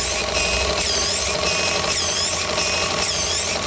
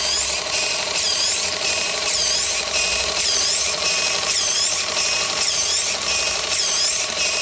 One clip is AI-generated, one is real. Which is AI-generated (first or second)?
second